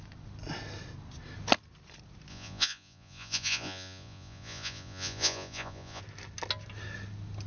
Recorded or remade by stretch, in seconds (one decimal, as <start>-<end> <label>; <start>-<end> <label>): 0.0-2.3 recorded; 2.3-6.0 remade; 6.0-7.5 recorded